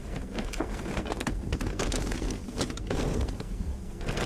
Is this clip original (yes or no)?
no